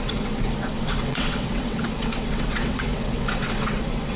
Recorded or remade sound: remade